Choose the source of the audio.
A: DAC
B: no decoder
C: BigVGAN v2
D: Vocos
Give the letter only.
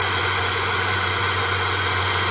D